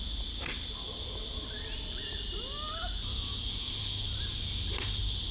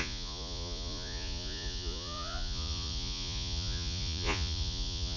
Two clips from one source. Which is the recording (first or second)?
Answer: first